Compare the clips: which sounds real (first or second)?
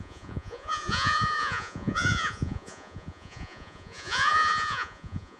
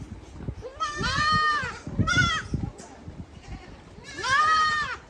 second